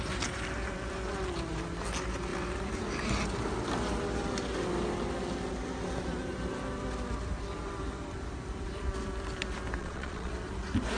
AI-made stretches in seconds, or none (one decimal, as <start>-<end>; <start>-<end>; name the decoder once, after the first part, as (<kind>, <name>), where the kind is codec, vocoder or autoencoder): 9.8-10.3 (vocoder, Vocos)

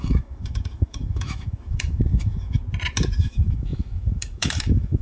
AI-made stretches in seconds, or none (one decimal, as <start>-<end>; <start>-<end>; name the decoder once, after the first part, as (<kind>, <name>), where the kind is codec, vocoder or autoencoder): 0.0-2.6 (autoencoder, DAC-VAE); 3.2-5.0